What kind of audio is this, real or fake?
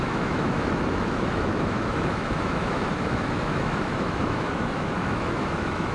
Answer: fake